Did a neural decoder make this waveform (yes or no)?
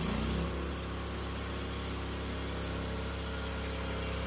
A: no